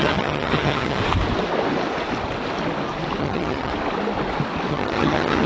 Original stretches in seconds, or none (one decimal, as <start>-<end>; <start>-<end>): 1.0-3.2; 3.7-4.7